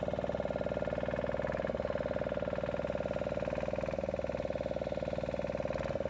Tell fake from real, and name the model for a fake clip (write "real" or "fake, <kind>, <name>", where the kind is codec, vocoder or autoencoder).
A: real